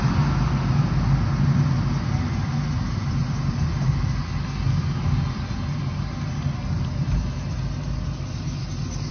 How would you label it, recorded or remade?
recorded